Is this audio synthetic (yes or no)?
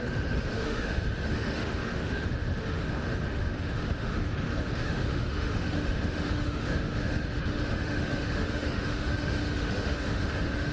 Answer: yes